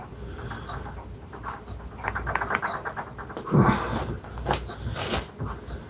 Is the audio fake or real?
real